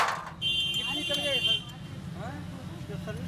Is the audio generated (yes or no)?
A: no